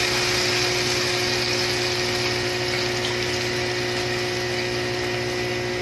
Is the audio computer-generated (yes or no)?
no